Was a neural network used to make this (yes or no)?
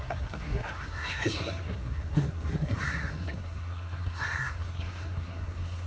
yes